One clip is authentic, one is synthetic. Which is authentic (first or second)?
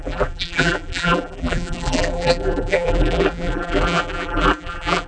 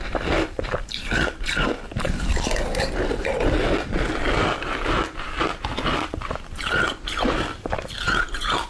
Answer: second